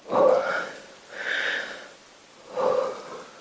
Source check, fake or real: real